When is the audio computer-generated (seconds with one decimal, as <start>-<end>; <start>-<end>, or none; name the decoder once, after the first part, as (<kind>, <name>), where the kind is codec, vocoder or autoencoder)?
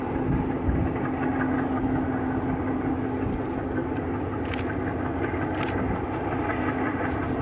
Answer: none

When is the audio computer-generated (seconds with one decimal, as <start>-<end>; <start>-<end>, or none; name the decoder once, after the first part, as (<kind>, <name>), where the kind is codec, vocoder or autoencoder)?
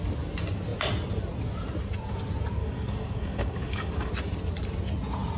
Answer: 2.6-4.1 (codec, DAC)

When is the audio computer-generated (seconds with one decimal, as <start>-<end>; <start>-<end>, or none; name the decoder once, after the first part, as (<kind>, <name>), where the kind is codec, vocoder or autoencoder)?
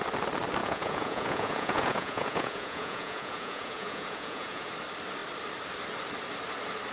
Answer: 0.6-4.7 (vocoder, Vocos)